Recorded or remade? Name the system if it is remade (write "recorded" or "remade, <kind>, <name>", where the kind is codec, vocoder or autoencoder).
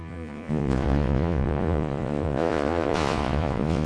remade, vocoder, Vocos